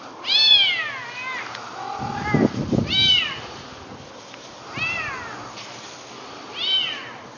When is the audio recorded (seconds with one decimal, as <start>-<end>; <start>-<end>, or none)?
0.0-7.4